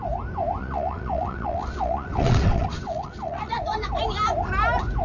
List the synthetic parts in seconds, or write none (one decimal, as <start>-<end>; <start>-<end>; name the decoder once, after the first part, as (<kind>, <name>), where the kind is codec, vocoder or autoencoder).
0.6-3.6 (vocoder, WaveNeXt)